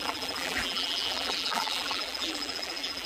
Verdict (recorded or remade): remade